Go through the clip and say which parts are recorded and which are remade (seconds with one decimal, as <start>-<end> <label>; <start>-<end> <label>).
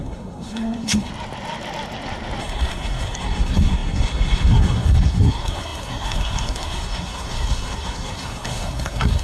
0.0-1.1 remade; 1.1-2.4 recorded; 2.4-9.2 remade